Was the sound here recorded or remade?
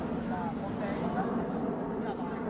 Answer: recorded